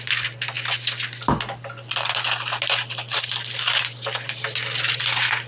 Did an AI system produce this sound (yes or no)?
no